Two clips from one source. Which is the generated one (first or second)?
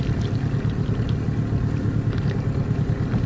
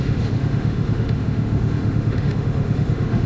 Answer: second